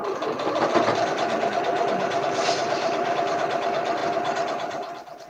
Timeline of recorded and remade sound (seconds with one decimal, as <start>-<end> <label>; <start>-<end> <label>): 0.0-3.2 remade; 3.2-4.0 recorded; 4.0-5.3 remade